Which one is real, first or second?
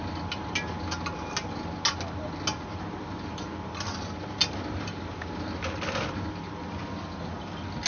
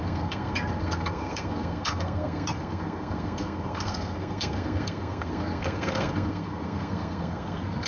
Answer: first